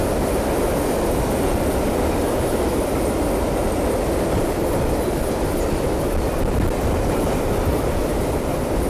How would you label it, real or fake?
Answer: fake